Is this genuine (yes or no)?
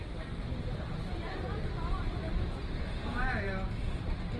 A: no